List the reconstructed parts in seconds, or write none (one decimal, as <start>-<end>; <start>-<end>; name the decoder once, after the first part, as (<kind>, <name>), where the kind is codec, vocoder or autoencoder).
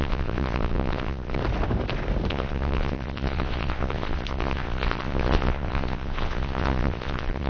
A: 0.0-1.4 (vocoder, WaveNeXt); 2.3-7.5